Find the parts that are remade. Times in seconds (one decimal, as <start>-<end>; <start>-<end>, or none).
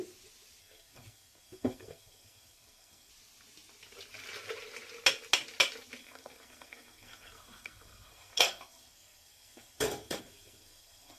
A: 0.6-3.1; 6.0-11.2